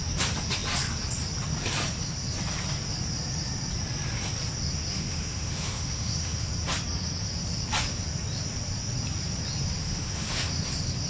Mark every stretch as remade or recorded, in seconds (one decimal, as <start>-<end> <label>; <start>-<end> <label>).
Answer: 0.0-4.9 recorded; 4.9-6.5 remade; 6.5-9.8 recorded; 9.8-10.5 remade; 10.5-11.1 recorded